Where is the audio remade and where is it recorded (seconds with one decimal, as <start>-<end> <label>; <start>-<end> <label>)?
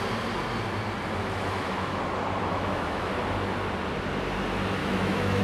0.0-1.2 recorded; 1.2-2.0 remade; 2.0-2.4 recorded; 2.4-3.1 remade; 3.1-4.8 recorded; 4.8-5.4 remade